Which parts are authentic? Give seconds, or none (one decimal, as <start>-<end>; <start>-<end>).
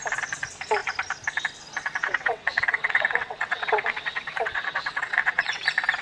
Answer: 0.0-2.0; 5.6-6.0